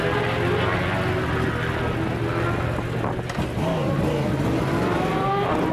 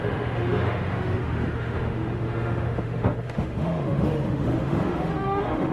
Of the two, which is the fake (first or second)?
second